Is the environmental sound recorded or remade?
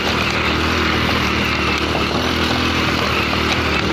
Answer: recorded